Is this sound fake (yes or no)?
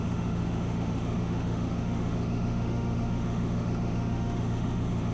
yes